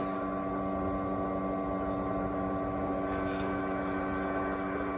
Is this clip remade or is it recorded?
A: recorded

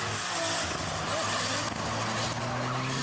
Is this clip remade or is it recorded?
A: recorded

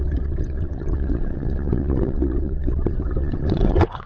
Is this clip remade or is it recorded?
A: remade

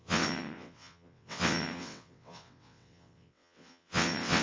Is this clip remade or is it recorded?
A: remade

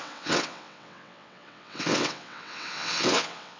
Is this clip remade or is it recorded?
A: remade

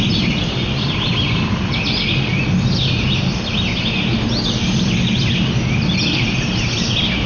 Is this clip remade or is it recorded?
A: recorded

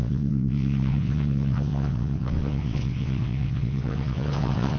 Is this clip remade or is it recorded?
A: remade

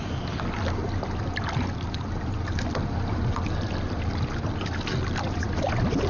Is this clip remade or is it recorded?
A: recorded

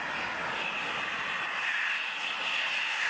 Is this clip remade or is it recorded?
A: recorded